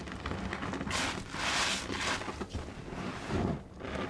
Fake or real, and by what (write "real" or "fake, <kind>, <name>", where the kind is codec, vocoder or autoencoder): real